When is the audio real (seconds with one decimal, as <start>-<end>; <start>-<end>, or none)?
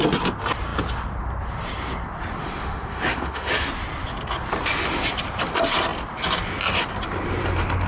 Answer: 0.0-2.4; 3.5-7.9